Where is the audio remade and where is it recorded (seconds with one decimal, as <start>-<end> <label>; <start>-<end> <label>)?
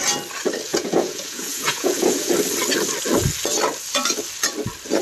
0.0-0.7 recorded; 0.7-2.3 remade; 2.3-5.0 recorded